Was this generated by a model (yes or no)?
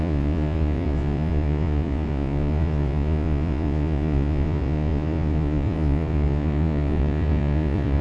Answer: yes